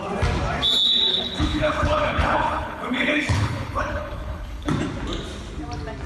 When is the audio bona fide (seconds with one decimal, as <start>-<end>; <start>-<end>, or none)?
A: 0.0-1.1; 4.7-6.1